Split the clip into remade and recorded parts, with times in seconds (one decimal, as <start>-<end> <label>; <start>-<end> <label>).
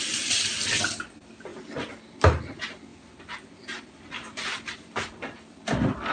0.0-2.9 recorded; 2.9-6.1 remade